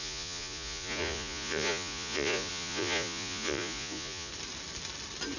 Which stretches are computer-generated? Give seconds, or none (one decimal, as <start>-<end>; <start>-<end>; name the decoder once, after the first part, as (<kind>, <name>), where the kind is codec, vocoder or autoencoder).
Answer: 0.0-4.3 (vocoder, Vocos)